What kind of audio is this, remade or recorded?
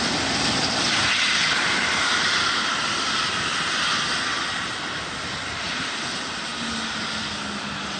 recorded